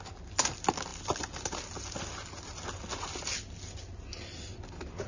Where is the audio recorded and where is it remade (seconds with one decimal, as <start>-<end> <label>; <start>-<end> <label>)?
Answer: 0.0-5.1 recorded